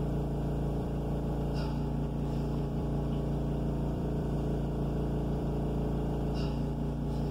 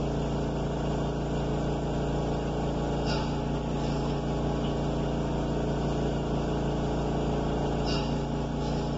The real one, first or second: second